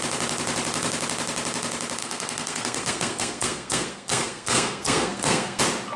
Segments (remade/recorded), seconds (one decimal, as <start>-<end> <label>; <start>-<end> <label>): 0.0-2.0 recorded; 2.0-5.6 remade; 5.6-6.0 recorded